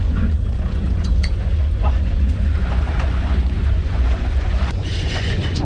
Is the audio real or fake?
fake